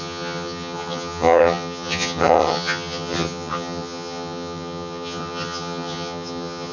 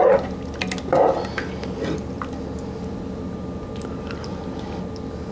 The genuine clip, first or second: second